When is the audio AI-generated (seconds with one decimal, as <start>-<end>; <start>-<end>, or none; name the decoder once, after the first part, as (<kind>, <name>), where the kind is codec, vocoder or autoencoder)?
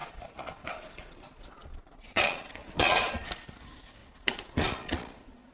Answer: 0.0-3.3 (vocoder, Vocos); 4.0-5.5